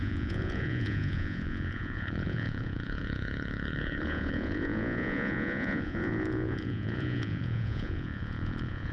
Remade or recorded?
remade